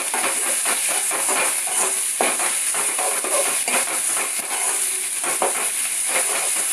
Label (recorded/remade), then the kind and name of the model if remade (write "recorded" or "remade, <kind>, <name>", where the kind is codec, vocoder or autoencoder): recorded